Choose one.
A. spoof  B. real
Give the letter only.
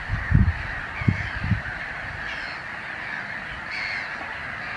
B